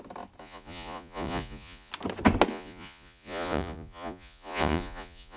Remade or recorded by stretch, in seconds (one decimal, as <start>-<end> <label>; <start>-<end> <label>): 0.0-0.4 recorded; 0.4-1.9 remade; 1.9-2.5 recorded; 2.5-5.4 remade

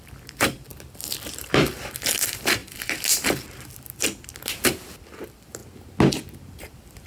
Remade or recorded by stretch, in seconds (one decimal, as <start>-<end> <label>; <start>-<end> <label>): 0.0-5.6 remade; 5.6-6.6 recorded; 6.6-7.1 remade

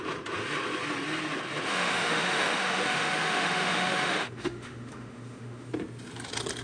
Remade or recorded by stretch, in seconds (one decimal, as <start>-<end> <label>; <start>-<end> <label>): 0.0-1.7 recorded; 1.7-5.7 remade; 5.7-6.6 recorded